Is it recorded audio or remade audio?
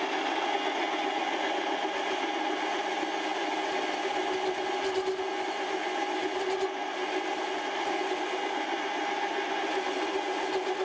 recorded